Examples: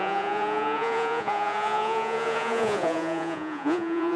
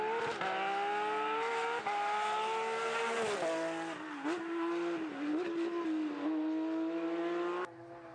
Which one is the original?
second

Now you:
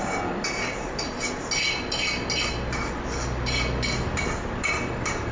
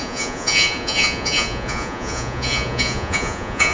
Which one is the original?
first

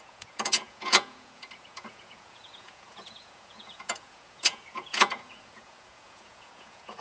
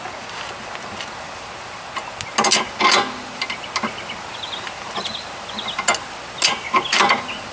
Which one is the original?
second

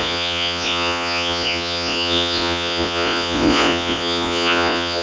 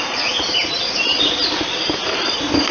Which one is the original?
second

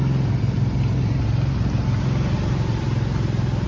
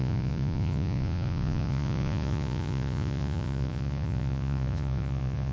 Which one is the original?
first